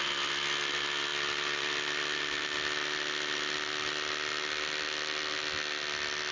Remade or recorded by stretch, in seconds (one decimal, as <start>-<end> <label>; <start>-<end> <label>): 0.0-6.3 recorded